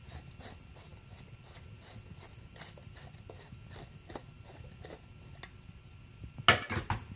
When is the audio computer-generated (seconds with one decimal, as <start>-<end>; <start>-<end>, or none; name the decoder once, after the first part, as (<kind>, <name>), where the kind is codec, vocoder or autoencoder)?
none